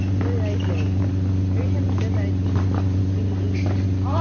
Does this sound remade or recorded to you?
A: recorded